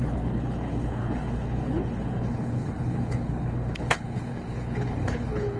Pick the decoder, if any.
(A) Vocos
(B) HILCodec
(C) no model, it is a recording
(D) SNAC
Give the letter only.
B